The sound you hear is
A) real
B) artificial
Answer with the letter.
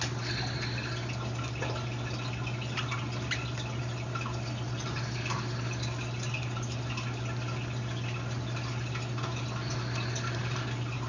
A